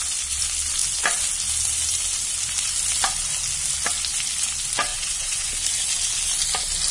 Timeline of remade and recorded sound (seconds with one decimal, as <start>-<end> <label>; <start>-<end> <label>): 0.0-4.9 recorded; 4.9-5.5 remade; 5.5-6.9 recorded